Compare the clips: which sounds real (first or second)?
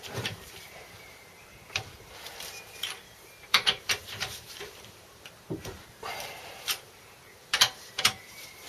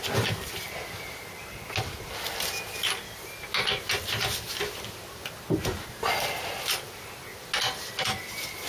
second